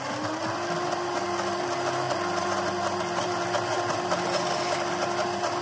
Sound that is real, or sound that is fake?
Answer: real